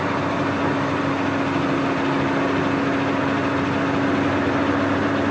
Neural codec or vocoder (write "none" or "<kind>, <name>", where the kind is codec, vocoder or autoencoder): none